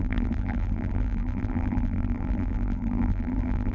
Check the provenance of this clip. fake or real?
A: fake